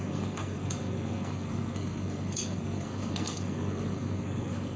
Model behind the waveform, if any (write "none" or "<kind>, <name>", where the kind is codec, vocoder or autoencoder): codec, SNAC